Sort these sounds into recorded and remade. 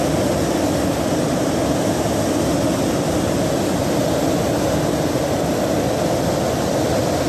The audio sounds recorded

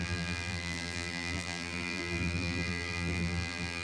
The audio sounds remade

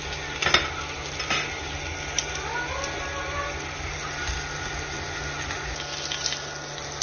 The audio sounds recorded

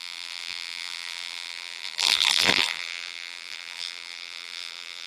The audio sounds remade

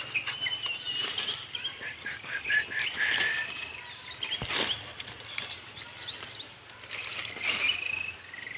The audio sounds recorded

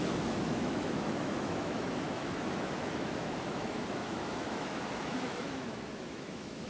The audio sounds remade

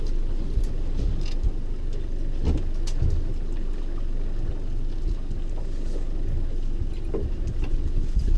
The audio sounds recorded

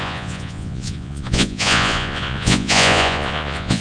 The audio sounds remade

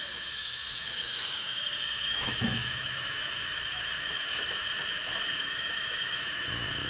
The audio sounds remade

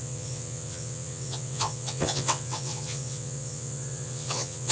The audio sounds remade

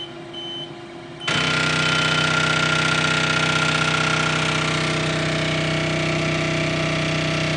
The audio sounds recorded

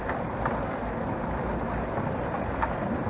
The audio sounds recorded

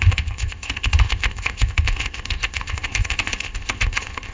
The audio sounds remade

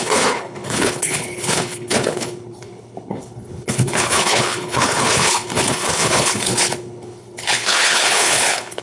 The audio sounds remade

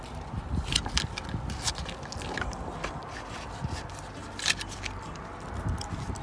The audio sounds recorded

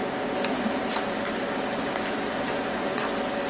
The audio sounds recorded